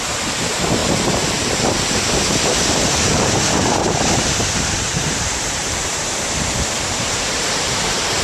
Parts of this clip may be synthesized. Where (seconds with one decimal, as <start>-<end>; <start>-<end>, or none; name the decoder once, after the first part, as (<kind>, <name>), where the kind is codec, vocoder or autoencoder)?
0.0-8.2 (vocoder, BigVGAN v2)